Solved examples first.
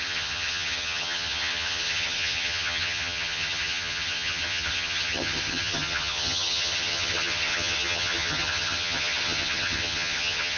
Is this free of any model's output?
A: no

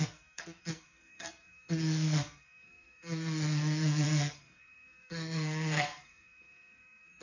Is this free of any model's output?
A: no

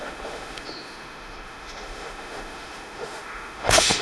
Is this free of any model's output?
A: no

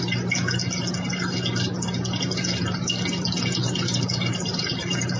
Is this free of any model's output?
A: yes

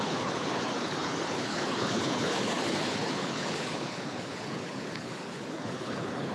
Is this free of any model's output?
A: no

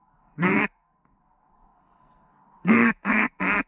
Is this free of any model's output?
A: no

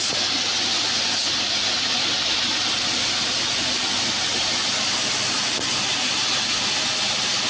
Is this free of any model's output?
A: yes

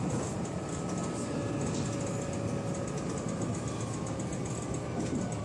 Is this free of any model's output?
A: yes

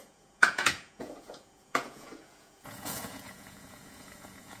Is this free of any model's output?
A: no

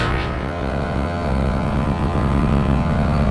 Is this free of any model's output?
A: no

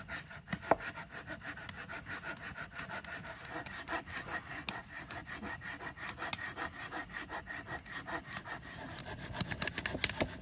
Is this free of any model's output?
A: yes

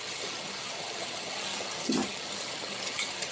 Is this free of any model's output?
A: no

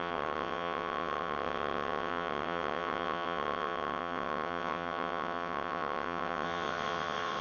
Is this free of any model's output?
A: no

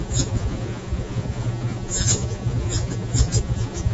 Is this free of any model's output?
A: no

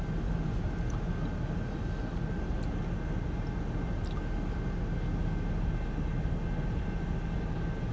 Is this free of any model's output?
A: yes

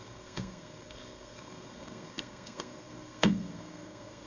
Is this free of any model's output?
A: no